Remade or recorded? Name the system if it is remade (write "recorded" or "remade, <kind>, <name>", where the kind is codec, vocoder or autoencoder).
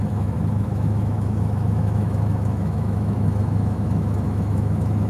remade, autoencoder, DAC-VAE